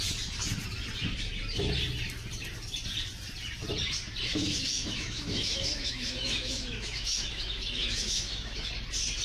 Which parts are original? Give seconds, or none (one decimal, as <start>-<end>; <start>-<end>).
0.0-4.3; 8.7-9.2